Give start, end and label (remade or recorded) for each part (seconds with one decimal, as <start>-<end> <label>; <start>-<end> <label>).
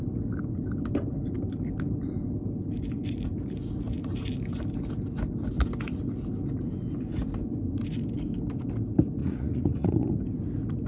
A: 0.0-9.2 recorded; 9.2-10.1 remade; 10.1-10.9 recorded